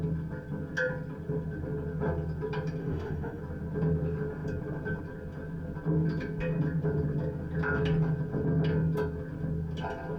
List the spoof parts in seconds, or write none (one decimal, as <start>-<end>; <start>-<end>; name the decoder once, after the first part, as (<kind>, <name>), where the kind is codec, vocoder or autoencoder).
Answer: 2.8-3.4 (autoencoder, DAC-VAE)